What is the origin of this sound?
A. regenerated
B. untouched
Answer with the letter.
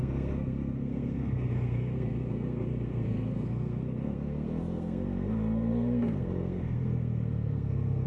A